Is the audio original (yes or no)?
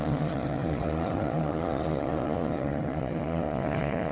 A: no